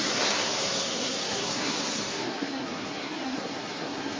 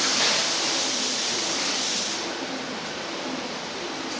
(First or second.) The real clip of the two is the second